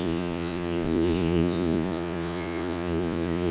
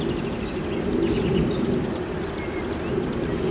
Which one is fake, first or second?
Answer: first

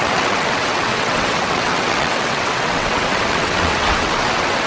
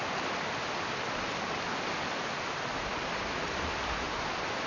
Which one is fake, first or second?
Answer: first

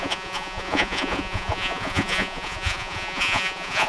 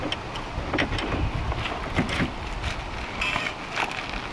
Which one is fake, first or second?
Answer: first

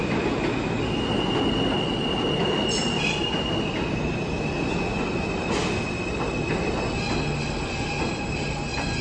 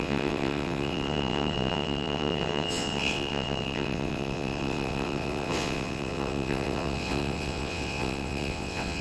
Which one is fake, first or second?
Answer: second